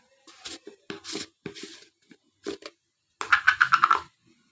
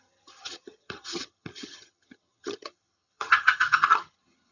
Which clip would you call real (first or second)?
first